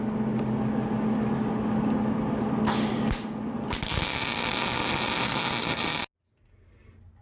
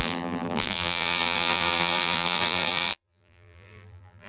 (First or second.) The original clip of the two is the first